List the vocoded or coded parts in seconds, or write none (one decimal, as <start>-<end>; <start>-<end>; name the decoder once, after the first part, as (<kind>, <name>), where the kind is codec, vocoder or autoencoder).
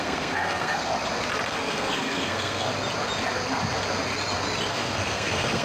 0.0-0.8 (codec, SNAC); 1.5-2.7; 4.7-5.6